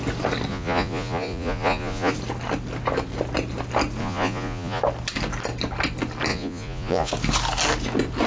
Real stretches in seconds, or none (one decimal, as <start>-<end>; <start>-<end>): 0.0-0.5; 2.1-4.0; 4.8-6.3; 7.1-8.3